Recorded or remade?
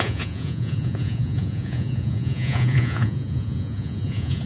remade